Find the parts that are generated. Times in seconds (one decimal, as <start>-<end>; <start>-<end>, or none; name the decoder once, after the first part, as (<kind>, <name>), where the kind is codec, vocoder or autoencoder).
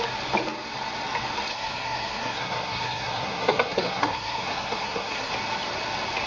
1.5-5.3 (codec, SNAC)